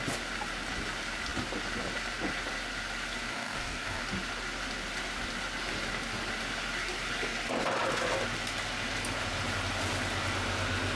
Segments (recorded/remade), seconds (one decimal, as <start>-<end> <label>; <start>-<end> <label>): 0.0-3.3 recorded; 3.3-4.0 remade; 4.0-11.0 recorded